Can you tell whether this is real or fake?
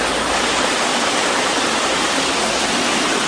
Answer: real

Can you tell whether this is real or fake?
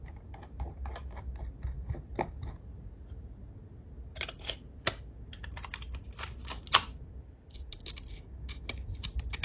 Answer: real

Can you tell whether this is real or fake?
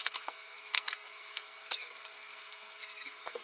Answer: fake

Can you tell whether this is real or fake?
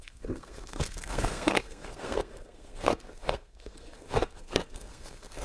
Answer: fake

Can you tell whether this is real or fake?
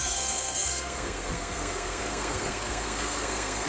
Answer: fake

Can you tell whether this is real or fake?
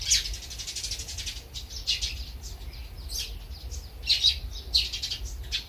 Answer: real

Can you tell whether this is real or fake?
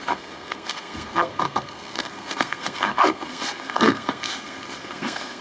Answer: fake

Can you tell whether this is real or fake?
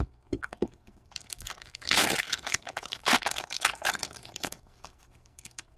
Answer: fake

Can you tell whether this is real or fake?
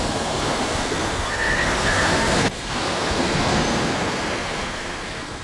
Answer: fake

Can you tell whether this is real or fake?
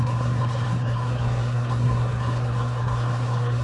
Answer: fake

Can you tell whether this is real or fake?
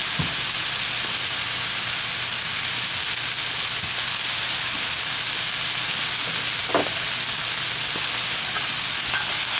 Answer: real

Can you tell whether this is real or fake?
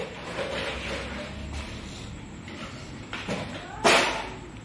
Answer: real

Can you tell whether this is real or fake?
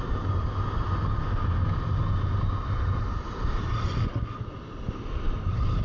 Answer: real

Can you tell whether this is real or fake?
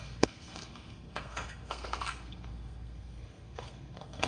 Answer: fake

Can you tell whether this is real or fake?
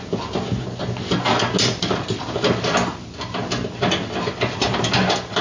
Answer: real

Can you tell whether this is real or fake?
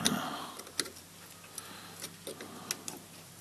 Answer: real